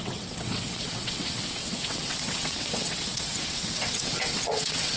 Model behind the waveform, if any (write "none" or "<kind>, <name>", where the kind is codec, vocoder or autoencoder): vocoder, WaveNeXt